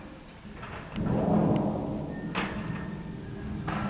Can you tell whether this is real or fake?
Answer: real